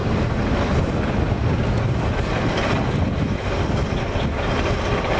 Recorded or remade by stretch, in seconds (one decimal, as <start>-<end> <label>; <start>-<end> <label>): 0.0-5.2 recorded